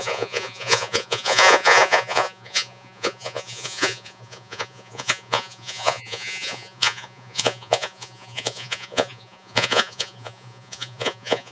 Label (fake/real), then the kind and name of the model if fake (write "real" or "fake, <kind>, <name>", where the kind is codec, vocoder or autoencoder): fake, vocoder, Vocos